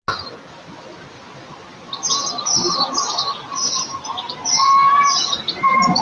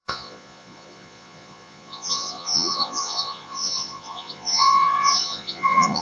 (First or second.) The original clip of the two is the first